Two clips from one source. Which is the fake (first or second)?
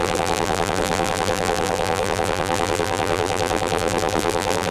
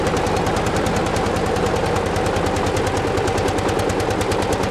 first